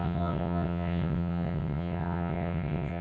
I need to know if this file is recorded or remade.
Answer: remade